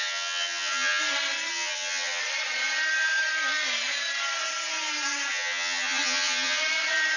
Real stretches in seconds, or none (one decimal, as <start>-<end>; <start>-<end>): 1.0-1.5; 2.2-5.3; 6.6-7.2